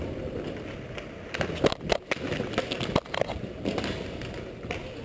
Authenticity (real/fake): real